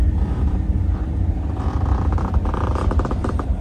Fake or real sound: fake